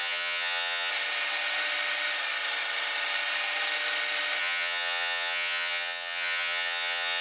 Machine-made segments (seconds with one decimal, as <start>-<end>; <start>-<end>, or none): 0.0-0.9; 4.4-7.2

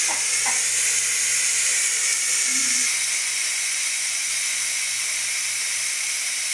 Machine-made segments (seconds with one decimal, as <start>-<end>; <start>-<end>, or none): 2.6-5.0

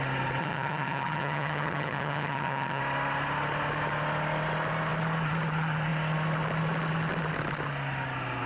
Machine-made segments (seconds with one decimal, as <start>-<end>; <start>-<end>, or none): 0.4-2.8